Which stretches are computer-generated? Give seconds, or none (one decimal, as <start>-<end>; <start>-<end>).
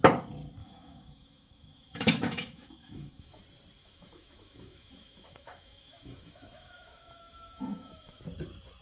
0.6-3.4; 3.8-8.2